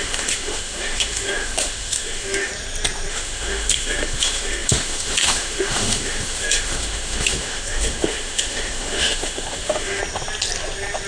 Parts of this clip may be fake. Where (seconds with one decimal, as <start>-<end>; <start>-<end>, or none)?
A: 0.0-2.5; 3.1-10.0